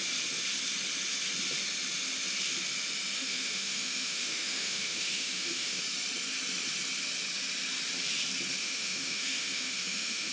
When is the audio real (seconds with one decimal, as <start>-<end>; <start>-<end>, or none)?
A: 0.0-3.2; 5.8-8.6